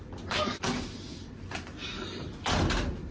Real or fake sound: real